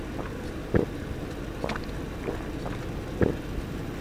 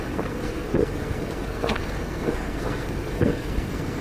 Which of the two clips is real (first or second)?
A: first